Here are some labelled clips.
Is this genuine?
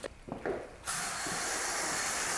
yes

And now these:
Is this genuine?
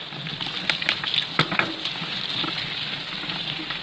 yes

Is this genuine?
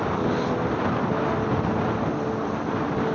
yes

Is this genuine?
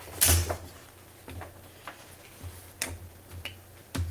yes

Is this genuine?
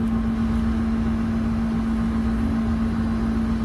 yes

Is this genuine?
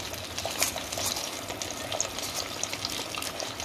yes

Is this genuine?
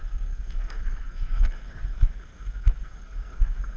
no